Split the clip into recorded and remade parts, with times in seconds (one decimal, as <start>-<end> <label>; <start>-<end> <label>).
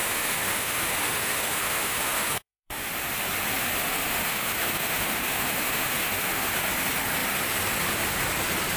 0.0-2.9 remade; 2.9-3.9 recorded; 3.9-6.5 remade; 6.5-8.8 recorded